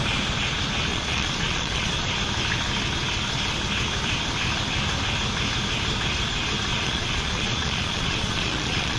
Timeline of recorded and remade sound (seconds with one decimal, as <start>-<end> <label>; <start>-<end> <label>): 0.0-0.9 recorded; 0.9-2.1 remade; 2.1-6.7 recorded; 6.7-9.0 remade